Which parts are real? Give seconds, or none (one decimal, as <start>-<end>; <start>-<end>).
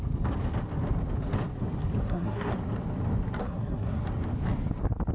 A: 0.0-2.0; 2.5-3.4; 4.0-5.1